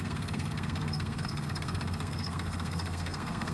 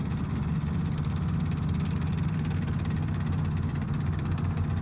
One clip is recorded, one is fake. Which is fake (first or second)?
first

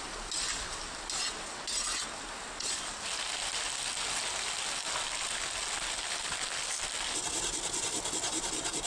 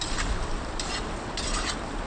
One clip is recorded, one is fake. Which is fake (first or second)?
second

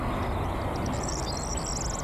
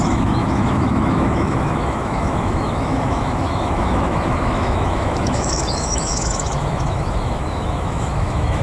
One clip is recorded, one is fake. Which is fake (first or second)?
second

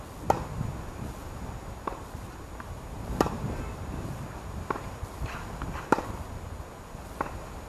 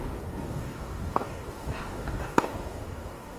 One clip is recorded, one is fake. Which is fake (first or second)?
second